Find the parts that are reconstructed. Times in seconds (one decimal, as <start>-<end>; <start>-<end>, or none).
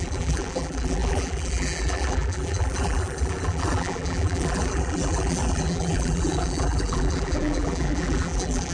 0.0-8.7